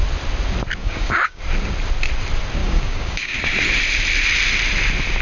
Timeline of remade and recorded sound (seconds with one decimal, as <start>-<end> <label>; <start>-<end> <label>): 0.0-0.8 recorded; 0.8-1.4 remade; 1.4-2.6 recorded; 2.6-3.4 remade; 3.4-5.2 recorded